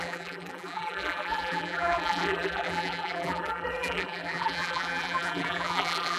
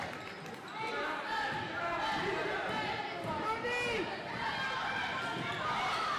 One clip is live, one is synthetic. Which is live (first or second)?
second